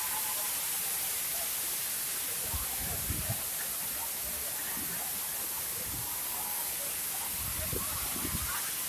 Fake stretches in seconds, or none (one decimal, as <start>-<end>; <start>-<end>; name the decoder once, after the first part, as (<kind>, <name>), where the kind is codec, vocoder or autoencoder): 6.2-6.8 (codec, DAC)